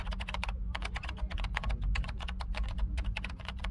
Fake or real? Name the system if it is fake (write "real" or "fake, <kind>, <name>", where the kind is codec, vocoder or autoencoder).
fake, vocoder, Vocos